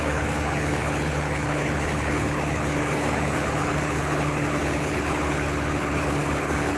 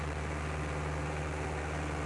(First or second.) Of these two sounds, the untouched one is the second